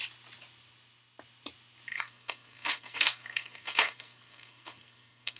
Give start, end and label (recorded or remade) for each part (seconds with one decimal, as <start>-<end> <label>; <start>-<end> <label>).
0.0-1.9 recorded; 1.9-5.4 remade

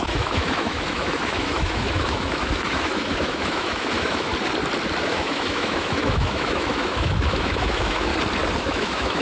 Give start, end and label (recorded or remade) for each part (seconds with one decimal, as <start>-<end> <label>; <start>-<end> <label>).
0.0-4.3 remade; 4.3-5.0 recorded; 5.0-8.1 remade; 8.1-8.6 recorded; 8.6-9.2 remade

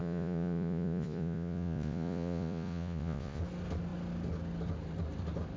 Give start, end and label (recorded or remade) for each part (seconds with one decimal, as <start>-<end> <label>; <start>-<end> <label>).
0.0-3.4 remade; 3.4-5.6 recorded

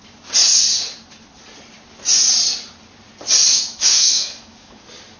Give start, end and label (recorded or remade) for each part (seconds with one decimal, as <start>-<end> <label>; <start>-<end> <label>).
0.0-3.5 recorded; 3.5-4.8 remade; 4.8-5.2 recorded

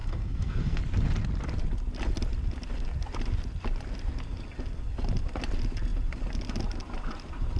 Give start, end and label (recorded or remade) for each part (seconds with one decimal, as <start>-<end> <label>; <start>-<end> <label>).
0.0-0.8 remade; 0.8-7.6 recorded

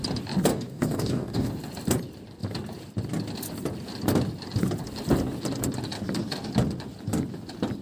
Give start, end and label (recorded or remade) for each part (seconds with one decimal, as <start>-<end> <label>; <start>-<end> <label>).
0.0-0.5 recorded; 0.5-1.5 remade; 1.5-7.8 recorded

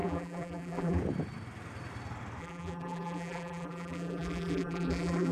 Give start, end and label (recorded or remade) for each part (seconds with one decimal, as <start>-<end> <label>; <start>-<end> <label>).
0.0-1.0 remade; 1.0-2.4 recorded; 2.4-5.3 remade